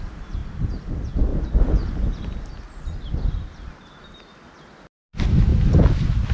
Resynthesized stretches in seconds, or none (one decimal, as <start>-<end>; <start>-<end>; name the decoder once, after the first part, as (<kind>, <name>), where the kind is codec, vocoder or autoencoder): none